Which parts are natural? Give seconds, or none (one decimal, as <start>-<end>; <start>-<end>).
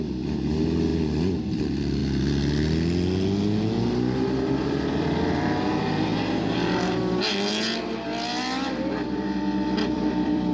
0.9-1.5; 2.0-4.6; 6.1-7.8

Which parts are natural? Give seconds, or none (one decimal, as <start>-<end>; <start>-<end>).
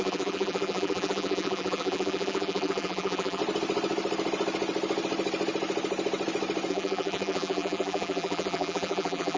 3.4-6.7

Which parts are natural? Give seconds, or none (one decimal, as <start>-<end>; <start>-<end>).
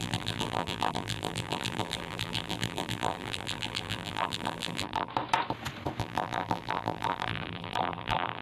5.1-6.0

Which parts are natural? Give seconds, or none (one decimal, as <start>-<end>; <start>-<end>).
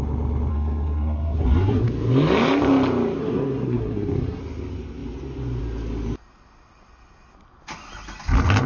0.0-0.5; 1.9-3.2; 4.4-8.7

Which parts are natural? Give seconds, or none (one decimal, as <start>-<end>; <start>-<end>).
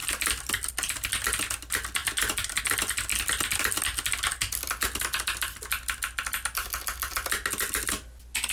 0.0-8.5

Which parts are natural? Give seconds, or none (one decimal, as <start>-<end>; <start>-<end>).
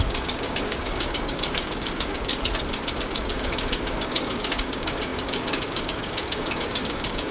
2.3-2.9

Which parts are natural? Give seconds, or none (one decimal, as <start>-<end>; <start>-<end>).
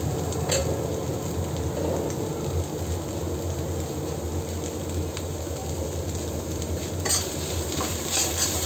0.6-5.1